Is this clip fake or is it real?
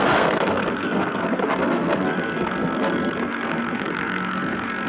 fake